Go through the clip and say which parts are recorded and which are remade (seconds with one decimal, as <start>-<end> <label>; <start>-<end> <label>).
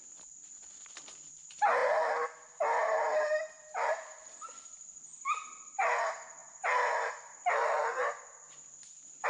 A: 0.0-6.4 recorded; 6.4-7.7 remade; 7.7-9.3 recorded